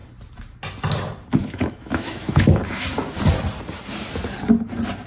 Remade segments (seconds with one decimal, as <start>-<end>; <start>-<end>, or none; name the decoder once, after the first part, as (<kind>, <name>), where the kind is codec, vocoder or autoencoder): 1.4-2.6 (autoencoder, DAC-VAE)